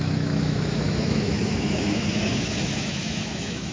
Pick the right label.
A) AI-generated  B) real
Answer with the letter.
A